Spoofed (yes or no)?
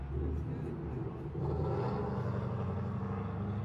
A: no